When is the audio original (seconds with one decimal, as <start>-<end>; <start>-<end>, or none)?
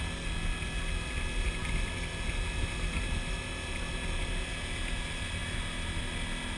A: 0.0-6.6